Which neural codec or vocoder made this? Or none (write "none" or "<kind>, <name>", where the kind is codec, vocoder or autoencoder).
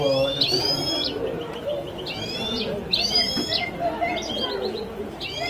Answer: none